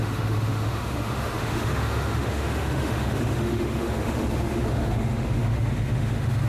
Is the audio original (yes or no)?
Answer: no